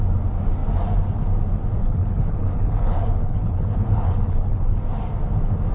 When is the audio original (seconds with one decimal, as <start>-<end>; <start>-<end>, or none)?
0.0-1.8; 4.8-5.7